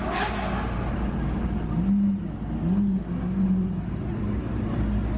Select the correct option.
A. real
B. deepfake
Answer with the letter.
A